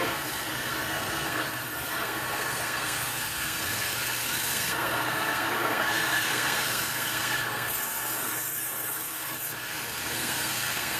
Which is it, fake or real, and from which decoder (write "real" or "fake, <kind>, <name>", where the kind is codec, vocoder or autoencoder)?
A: fake, codec, SNAC